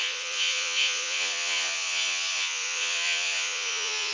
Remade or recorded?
remade